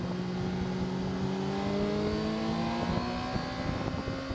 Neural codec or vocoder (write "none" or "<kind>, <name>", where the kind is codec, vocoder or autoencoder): none